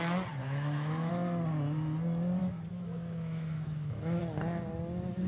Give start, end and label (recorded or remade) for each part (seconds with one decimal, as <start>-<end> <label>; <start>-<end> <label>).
0.0-0.4 recorded; 0.4-1.1 remade; 1.1-2.4 recorded; 2.4-4.2 remade; 4.2-5.3 recorded